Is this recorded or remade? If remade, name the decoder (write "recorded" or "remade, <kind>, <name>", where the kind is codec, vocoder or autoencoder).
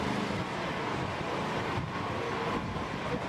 recorded